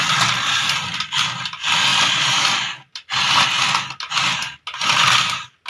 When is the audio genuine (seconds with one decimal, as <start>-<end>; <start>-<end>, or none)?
0.0-5.7